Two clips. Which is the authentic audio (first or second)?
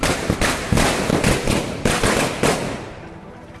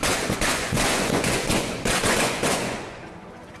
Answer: first